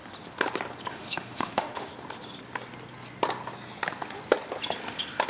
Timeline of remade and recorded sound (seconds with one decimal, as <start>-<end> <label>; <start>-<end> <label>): 0.0-0.9 recorded; 0.9-1.9 remade; 1.9-5.3 recorded